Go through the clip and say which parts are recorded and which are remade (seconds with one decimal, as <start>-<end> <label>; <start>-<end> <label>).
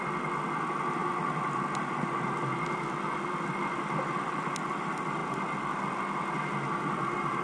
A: 0.0-7.4 recorded